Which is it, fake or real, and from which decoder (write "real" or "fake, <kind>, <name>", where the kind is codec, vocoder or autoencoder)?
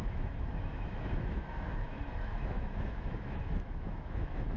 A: fake, autoencoder, DAC-VAE